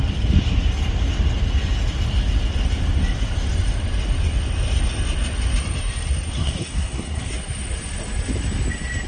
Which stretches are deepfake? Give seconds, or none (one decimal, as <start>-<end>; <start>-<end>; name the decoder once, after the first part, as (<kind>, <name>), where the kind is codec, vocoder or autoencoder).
6.4-7.3 (codec, SNAC)